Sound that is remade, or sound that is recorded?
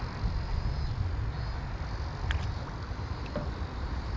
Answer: recorded